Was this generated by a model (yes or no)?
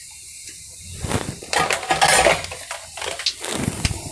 no